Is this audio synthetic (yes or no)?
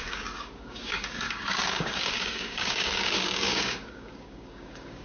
yes